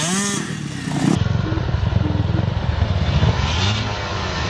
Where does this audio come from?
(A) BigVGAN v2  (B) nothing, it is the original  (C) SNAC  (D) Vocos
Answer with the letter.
B